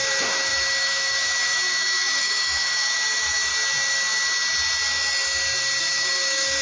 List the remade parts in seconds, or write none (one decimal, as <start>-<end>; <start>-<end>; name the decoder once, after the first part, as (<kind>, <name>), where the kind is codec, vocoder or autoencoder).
0.0-3.5 (autoencoder, DAC-VAE); 5.8-6.6